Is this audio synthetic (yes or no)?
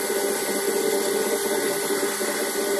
yes